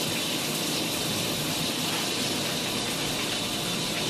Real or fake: fake